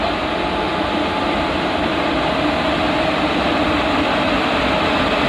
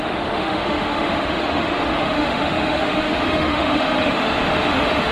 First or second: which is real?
first